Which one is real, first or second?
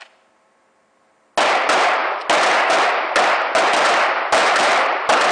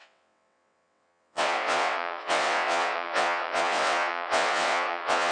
first